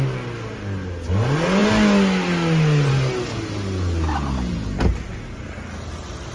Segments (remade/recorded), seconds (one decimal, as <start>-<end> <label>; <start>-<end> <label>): 0.0-6.3 recorded